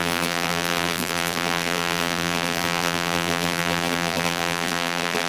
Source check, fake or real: fake